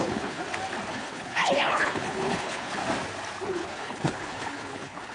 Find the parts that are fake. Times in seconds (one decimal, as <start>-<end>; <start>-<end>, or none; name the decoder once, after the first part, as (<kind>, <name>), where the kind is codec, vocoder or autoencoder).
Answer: 0.0-0.4 (codec, HILCodec); 0.9-2.8; 3.5-5.1